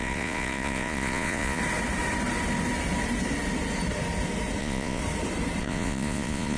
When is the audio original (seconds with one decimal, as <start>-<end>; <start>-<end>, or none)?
1.6-4.6; 5.0-5.6